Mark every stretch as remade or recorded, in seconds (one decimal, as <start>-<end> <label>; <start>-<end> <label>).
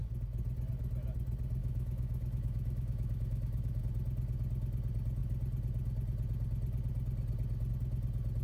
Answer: 0.0-1.6 recorded; 1.6-3.8 remade; 3.8-8.4 recorded